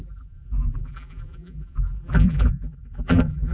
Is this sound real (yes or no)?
no